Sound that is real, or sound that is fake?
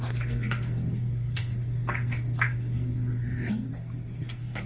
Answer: fake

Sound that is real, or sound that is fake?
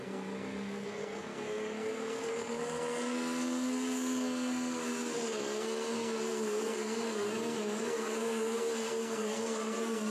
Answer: fake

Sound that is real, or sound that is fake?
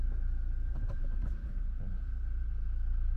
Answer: fake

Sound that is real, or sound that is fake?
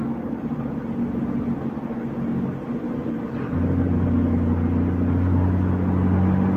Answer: real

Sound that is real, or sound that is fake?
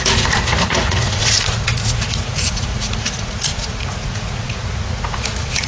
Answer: fake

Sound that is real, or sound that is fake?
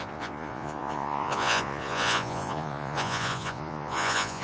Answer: fake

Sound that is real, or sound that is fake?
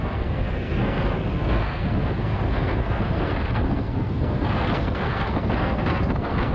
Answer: fake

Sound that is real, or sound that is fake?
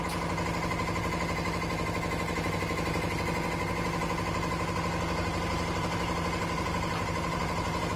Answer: real